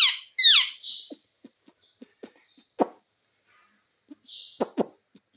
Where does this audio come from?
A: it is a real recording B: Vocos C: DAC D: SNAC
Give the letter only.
A